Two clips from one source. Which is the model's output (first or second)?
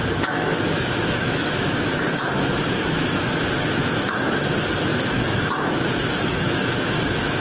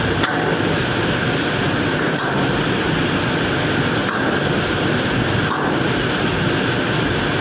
first